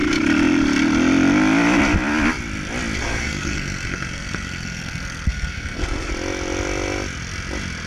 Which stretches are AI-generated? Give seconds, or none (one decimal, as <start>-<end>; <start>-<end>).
3.0-6.1

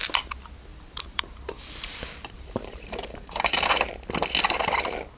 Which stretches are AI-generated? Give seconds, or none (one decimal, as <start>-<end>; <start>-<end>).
0.7-3.8

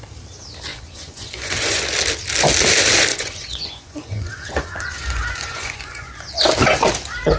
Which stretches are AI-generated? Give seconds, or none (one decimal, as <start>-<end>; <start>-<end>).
0.7-1.8; 3.1-6.1

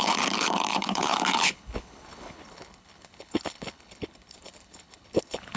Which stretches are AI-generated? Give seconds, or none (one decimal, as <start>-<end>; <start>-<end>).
0.0-5.6